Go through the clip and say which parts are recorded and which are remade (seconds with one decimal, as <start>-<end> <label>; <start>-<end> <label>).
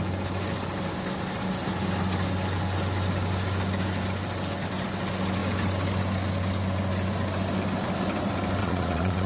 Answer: 0.0-8.6 recorded; 8.6-9.3 remade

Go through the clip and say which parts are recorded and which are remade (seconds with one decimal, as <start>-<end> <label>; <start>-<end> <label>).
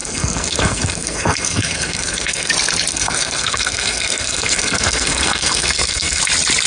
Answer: 0.0-2.5 remade; 2.5-2.9 recorded; 2.9-6.2 remade; 6.2-6.7 recorded